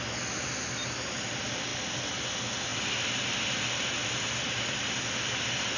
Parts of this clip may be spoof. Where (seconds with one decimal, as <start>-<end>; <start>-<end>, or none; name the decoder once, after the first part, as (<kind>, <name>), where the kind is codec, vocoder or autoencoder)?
none